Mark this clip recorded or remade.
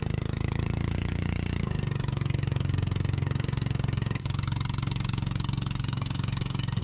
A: remade